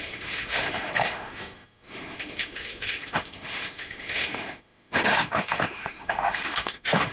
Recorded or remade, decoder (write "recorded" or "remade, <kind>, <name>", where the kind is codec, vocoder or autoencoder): remade, autoencoder, DAC-VAE